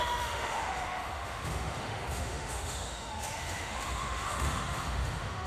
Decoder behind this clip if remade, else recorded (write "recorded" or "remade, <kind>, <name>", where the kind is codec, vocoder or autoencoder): remade, autoencoder, DAC-VAE